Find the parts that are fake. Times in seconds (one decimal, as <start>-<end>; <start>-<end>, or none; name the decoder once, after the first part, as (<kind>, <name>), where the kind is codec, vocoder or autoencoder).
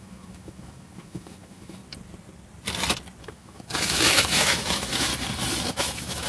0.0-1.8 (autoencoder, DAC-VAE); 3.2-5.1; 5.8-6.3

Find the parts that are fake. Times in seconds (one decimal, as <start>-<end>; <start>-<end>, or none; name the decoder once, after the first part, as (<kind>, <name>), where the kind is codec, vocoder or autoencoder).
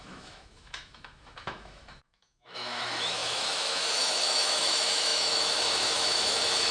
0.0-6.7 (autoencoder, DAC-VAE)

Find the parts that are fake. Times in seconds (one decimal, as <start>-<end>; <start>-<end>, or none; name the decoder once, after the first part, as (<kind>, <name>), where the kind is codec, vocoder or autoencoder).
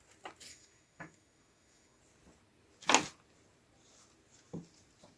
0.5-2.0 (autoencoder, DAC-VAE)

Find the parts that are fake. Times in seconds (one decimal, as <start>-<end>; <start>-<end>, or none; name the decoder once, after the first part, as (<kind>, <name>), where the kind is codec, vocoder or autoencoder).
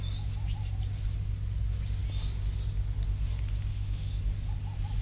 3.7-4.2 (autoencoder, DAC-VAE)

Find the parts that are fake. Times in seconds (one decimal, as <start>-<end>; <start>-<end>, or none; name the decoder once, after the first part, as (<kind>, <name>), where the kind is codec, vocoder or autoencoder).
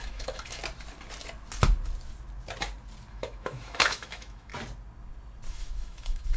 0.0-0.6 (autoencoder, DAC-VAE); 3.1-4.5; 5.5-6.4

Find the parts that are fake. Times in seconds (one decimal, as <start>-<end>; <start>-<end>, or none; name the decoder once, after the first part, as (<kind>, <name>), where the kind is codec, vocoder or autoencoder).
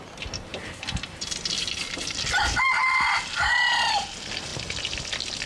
none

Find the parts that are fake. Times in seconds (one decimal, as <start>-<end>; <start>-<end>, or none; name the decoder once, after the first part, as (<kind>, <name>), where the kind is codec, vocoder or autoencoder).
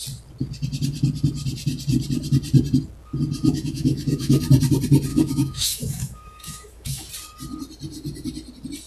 3.4-4.4 (autoencoder, DAC-VAE); 5.1-7.1